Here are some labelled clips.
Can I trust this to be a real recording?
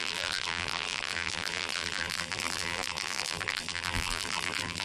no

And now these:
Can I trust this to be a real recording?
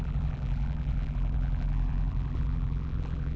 no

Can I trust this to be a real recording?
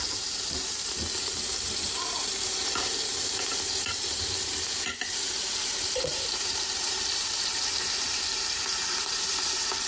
no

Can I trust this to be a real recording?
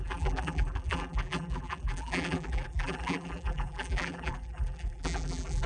no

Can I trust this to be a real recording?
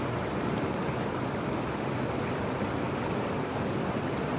yes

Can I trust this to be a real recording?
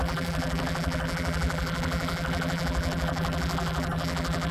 no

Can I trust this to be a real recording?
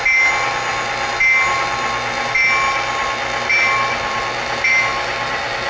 yes